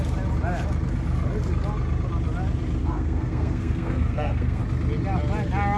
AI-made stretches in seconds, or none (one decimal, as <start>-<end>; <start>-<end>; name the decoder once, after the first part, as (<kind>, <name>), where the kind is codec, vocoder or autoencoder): 2.8-4.6 (codec, SNAC)